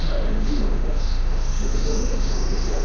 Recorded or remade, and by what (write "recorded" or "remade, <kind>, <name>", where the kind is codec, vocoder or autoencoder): remade, autoencoder, DAC-VAE